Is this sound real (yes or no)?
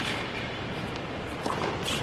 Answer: yes